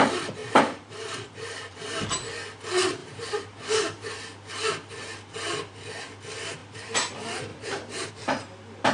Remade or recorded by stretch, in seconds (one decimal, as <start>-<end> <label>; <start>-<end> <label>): 0.0-0.4 recorded; 0.4-2.0 remade; 2.0-3.0 recorded; 3.0-4.1 remade; 4.1-6.6 recorded; 6.6-7.1 remade; 7.1-7.5 recorded; 7.5-8.1 remade; 8.1-8.9 recorded